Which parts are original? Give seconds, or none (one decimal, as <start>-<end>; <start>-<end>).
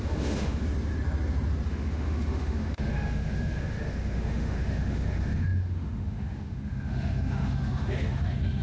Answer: 0.6-1.7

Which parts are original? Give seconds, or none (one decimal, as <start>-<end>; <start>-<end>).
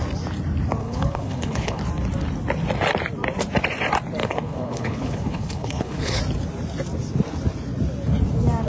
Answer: 0.0-0.8; 1.8-4.2; 6.2-8.7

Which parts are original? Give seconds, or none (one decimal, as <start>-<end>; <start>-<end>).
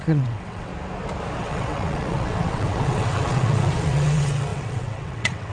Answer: 0.7-1.4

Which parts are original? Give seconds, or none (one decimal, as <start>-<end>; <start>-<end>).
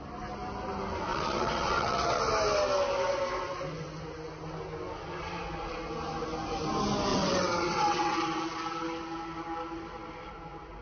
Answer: 0.0-1.1; 2.2-7.1; 8.4-10.8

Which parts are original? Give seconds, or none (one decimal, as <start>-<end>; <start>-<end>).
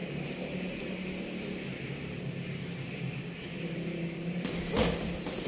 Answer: 0.0-5.5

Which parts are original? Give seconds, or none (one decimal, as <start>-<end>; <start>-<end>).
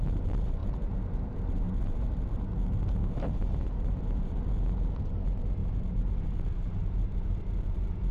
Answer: 0.0-0.6; 2.4-3.0; 4.4-5.6; 7.4-8.1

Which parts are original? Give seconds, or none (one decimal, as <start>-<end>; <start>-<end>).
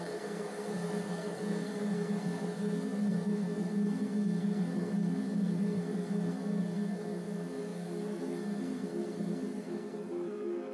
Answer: none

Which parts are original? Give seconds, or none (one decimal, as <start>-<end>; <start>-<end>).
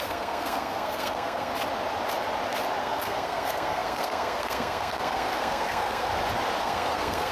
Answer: 1.5-2.8; 6.1-6.6